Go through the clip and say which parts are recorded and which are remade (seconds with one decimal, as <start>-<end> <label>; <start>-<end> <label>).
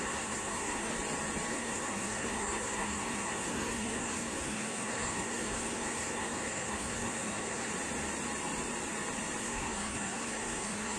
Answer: 0.0-0.9 remade; 0.9-1.5 recorded; 1.5-7.7 remade; 7.7-9.4 recorded; 9.4-11.0 remade